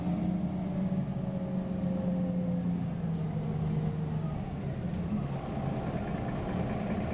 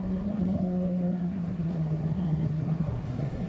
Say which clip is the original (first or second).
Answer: first